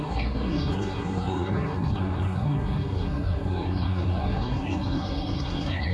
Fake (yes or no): yes